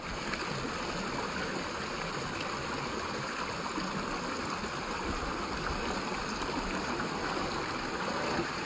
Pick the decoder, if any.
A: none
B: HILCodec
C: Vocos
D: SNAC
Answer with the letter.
A